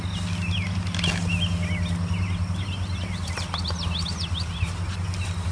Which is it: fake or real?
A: real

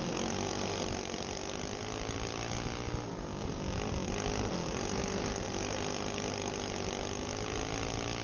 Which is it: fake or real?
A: real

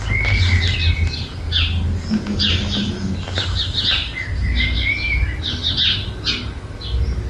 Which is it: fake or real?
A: real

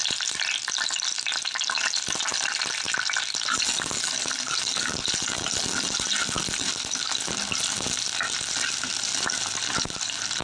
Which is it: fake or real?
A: real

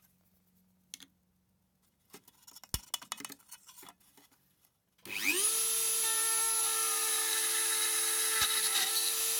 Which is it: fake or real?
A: real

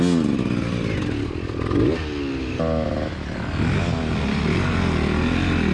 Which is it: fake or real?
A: real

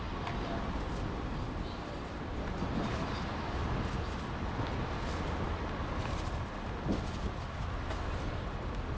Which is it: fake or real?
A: real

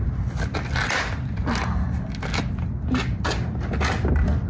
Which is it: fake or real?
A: real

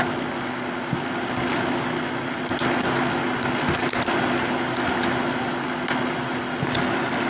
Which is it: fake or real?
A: real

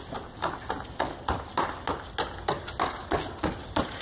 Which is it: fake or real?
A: real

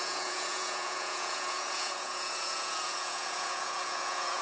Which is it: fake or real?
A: fake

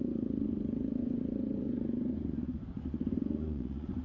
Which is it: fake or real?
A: fake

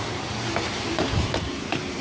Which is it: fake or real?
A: real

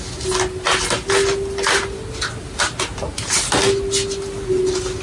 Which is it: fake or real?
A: real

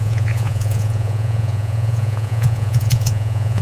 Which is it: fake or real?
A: fake